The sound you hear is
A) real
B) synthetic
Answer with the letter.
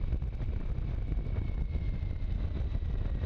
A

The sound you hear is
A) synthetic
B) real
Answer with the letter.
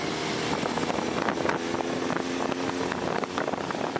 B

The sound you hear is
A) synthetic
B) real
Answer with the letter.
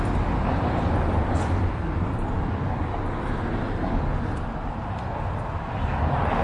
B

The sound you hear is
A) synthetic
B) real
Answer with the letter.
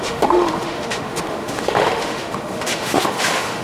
A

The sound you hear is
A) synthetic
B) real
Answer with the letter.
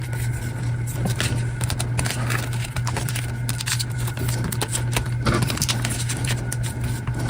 B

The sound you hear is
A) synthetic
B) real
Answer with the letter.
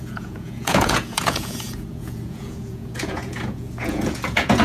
A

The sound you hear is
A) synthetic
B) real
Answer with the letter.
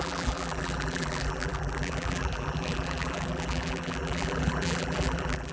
A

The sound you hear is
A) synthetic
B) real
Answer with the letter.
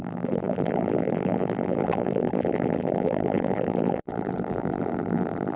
A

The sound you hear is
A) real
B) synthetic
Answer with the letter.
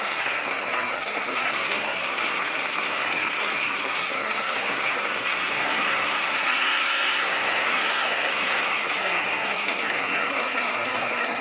B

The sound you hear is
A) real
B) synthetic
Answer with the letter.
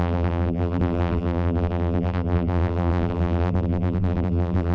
B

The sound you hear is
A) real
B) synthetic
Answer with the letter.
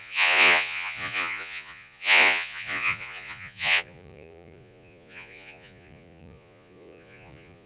B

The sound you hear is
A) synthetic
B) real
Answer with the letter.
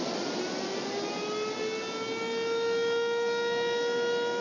B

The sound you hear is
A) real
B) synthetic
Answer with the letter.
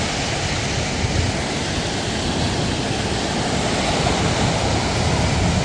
A